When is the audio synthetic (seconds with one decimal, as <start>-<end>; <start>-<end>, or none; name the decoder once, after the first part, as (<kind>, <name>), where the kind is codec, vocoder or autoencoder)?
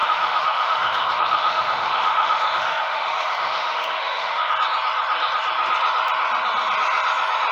0.0-4.5 (autoencoder, DAC-VAE)